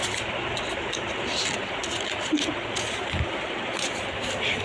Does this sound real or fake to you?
real